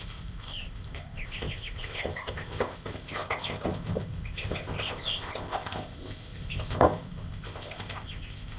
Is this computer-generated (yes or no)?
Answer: yes